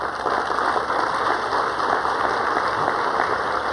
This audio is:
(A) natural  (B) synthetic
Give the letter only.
A